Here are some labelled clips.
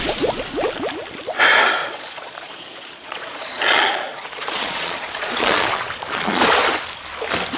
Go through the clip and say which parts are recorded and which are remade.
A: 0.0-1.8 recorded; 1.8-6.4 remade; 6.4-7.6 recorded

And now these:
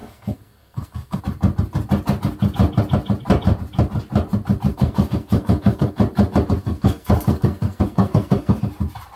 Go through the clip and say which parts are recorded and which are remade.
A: 0.0-1.2 remade; 1.2-4.7 recorded; 4.7-6.0 remade; 6.0-6.6 recorded; 6.6-8.6 remade; 8.6-9.2 recorded

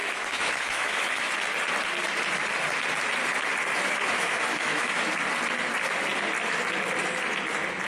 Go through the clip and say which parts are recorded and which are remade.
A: 0.0-1.3 remade; 1.3-3.8 recorded; 3.8-5.1 remade; 5.1-7.9 recorded

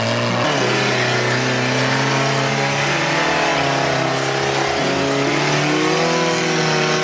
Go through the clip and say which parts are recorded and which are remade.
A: 0.0-7.0 recorded

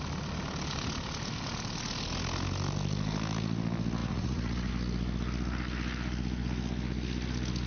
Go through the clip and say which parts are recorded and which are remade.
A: 0.0-4.0 recorded; 4.0-4.7 remade; 4.7-7.7 recorded